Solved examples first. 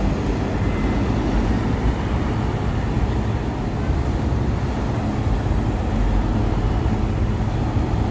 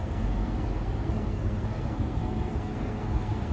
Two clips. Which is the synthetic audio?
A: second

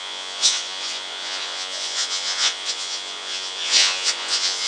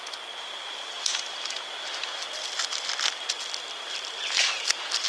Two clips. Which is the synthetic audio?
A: first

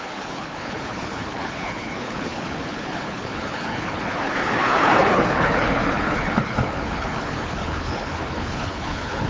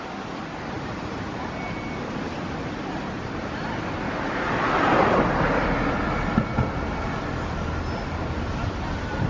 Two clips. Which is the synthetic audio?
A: first